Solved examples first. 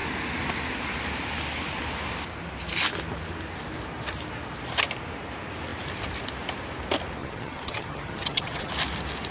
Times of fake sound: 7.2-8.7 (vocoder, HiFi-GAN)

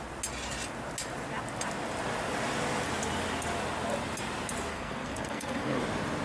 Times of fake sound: 4.7-5.8 (codec, SNAC)

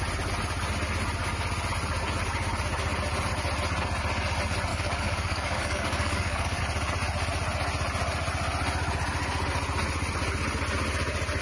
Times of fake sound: 4.7-6.6 (codec, DAC)

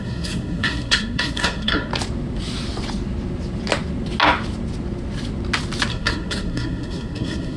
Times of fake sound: 0.0-1.9 (codec, SNAC); 5.9-7.6

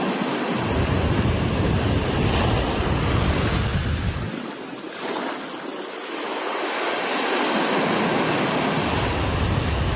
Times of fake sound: none